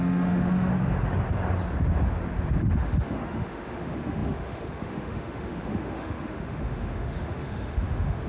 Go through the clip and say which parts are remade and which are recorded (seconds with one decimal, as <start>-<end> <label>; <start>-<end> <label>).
0.0-0.7 remade; 0.7-2.6 recorded; 2.6-8.3 remade